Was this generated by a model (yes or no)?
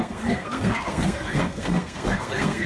yes